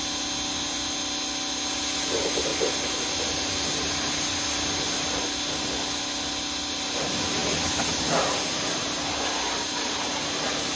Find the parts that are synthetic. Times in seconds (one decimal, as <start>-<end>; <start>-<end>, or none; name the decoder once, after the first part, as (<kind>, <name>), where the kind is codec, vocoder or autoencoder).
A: none